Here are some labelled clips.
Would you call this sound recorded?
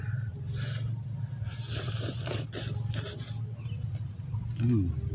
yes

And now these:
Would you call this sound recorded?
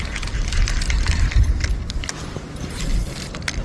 yes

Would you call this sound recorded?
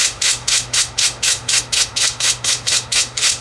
no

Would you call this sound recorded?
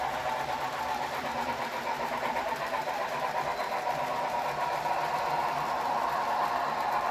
yes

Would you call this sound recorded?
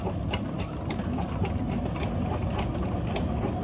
yes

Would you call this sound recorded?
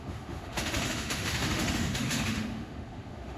no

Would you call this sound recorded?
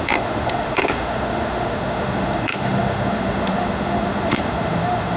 no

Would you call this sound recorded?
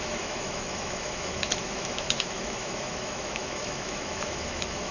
no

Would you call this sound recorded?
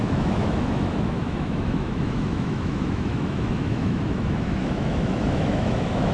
no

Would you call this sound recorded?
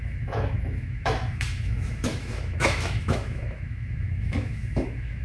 no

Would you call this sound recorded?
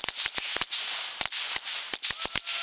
yes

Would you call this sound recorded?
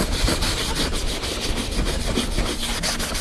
yes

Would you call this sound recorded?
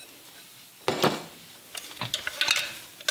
yes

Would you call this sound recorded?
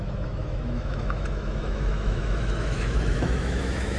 no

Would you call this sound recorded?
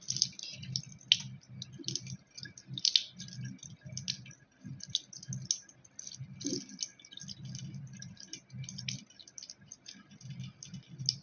yes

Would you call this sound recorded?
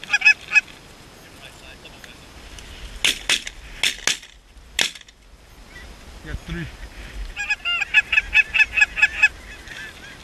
yes